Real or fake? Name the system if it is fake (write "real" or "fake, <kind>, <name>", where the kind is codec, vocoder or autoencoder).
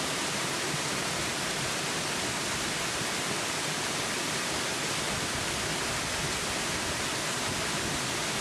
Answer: real